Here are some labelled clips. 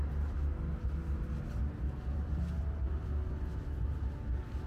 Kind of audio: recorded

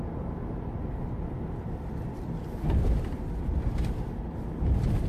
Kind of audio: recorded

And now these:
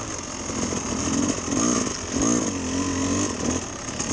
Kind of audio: recorded